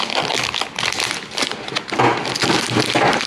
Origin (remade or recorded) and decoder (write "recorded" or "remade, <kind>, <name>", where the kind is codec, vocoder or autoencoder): recorded